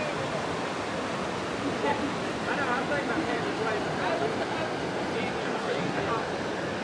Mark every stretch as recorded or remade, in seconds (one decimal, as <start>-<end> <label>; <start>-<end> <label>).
0.0-5.4 recorded; 5.4-6.1 remade; 6.1-6.8 recorded